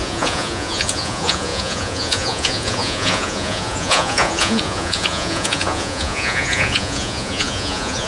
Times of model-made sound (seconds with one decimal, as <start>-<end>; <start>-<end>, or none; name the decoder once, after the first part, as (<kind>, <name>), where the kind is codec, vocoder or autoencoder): 0.0-8.1 (vocoder, Vocos)